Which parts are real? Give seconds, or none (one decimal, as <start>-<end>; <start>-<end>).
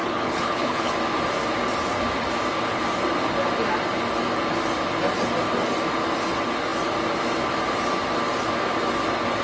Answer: 0.9-9.4